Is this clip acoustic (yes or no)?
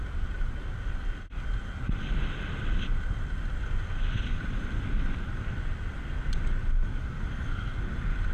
yes